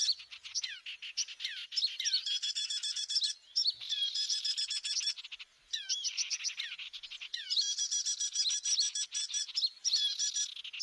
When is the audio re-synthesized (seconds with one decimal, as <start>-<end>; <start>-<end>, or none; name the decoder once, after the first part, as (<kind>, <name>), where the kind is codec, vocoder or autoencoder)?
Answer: 0.0-0.6 (vocoder, BigVGAN v2); 3.6-7.8; 9.2-10.3